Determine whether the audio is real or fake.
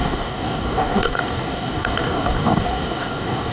fake